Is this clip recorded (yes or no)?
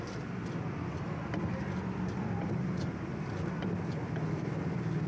yes